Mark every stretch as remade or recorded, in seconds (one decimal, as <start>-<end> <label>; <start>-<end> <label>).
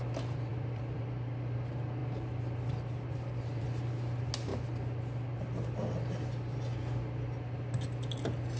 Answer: 0.0-0.5 recorded; 0.5-1.0 remade; 1.0-8.6 recorded